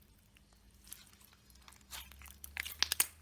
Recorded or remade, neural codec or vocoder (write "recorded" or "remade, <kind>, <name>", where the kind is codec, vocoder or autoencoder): recorded